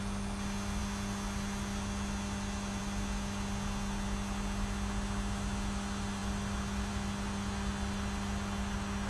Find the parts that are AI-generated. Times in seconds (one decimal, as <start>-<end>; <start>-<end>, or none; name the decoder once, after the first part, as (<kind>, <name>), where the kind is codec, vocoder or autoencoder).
none

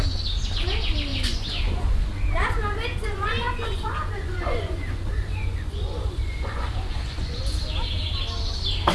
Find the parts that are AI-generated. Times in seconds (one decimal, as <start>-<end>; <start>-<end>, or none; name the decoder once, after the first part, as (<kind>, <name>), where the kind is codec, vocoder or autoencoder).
1.1-2.2 (vocoder, Vocos); 2.9-7.4

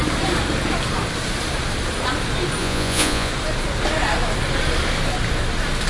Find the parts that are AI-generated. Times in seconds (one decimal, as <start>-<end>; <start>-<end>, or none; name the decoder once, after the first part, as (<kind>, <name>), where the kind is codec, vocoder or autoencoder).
2.6-3.3 (vocoder, Vocos)

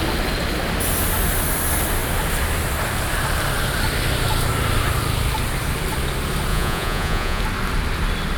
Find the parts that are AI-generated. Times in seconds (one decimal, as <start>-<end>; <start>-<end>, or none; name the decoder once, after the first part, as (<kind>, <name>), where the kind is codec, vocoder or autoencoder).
6.5-7.4 (vocoder, Vocos)